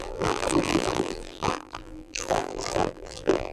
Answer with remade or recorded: remade